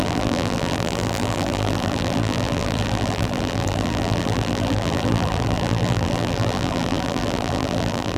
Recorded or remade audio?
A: remade